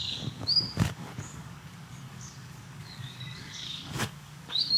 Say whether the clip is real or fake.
fake